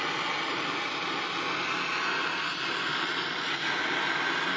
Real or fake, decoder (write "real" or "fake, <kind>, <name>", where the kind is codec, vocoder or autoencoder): real